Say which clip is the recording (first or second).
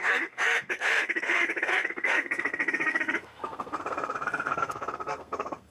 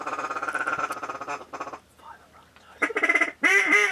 second